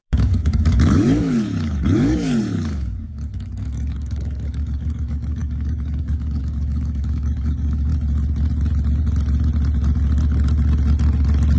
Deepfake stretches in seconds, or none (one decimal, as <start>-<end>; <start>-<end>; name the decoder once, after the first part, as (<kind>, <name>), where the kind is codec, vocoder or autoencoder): 0.0-7.9 (codec, DAC)